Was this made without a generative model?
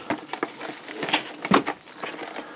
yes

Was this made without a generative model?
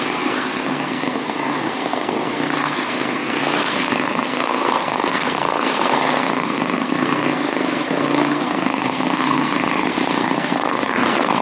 no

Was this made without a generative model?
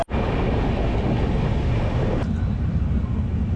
yes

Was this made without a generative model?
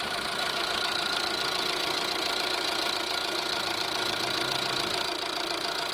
yes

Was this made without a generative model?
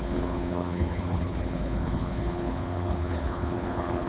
no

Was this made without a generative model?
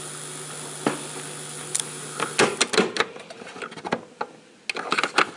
yes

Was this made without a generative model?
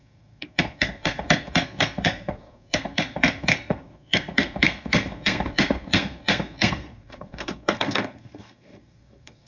no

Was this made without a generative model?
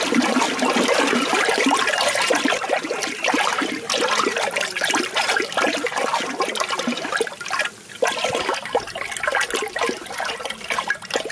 yes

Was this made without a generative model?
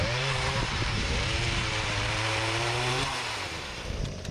no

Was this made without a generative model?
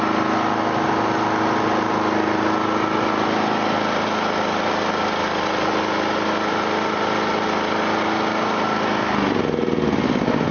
yes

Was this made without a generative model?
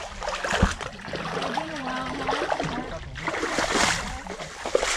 yes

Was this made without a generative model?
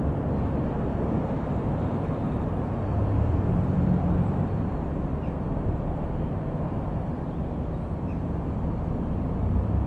no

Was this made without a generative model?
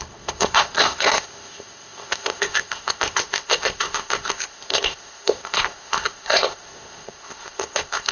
no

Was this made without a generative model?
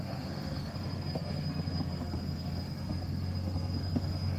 no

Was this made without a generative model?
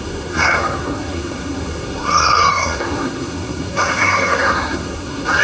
no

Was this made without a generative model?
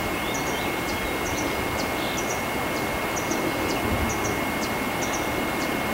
yes